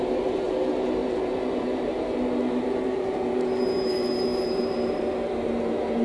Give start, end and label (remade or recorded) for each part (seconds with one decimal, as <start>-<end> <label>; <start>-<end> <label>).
0.0-6.0 remade